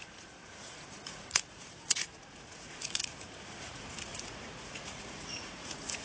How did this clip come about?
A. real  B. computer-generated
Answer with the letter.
B